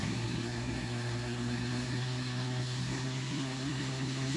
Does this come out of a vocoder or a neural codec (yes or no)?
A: yes